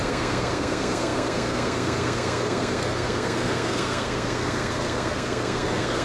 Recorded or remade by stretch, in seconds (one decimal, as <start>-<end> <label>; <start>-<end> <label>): 0.0-6.0 remade